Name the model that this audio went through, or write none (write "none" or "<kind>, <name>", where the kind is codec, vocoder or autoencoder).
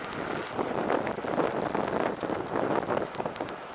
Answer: none